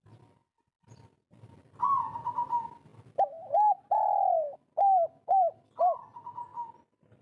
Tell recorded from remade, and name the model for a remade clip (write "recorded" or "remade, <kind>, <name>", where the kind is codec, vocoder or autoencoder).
recorded